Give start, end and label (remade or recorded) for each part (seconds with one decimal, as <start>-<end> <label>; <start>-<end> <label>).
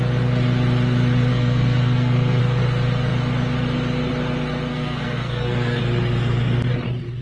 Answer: 0.0-1.3 recorded; 1.3-2.4 remade; 2.4-4.7 recorded; 4.7-5.8 remade; 5.8-7.2 recorded